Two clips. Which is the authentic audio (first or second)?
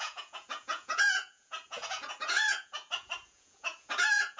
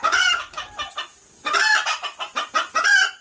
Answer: second